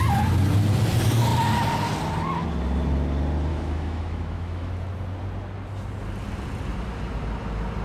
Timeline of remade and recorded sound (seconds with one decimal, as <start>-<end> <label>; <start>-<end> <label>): 0.0-3.5 recorded; 3.5-4.7 remade; 4.7-7.8 recorded